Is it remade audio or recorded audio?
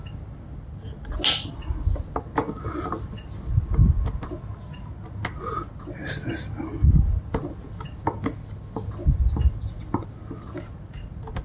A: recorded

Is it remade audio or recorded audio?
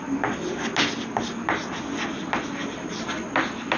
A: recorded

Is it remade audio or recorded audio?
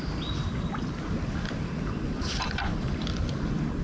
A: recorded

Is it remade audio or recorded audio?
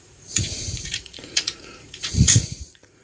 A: remade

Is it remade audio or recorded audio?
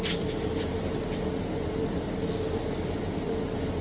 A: recorded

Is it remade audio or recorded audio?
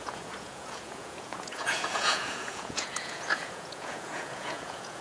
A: remade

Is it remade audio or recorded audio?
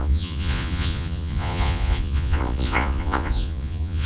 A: remade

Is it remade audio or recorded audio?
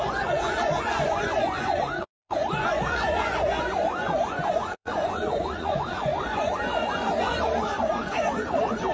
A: remade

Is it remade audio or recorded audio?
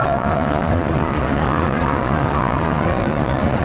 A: remade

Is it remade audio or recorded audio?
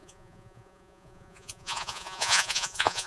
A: remade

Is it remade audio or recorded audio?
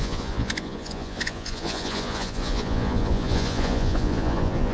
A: remade